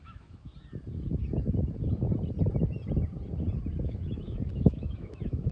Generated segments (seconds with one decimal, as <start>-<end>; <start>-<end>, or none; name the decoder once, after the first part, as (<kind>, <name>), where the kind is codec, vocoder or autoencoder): 0.0-0.5 (autoencoder, DAC-VAE); 3.8-5.5